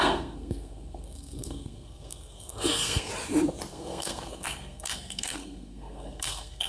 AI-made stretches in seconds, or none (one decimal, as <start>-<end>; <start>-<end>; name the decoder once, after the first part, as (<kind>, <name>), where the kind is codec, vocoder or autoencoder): 0.0-3.1 (codec, SNAC); 3.7-6.7